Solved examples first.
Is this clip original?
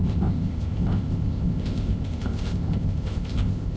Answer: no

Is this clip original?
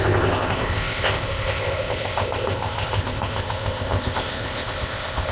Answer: no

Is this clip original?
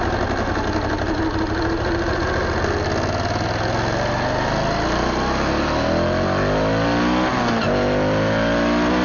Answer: yes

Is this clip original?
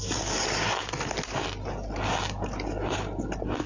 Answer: yes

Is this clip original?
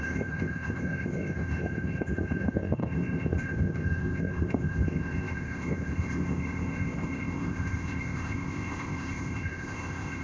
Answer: no